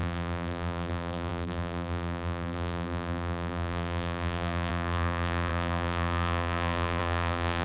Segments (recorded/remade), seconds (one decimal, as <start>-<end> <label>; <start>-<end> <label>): 0.0-7.6 remade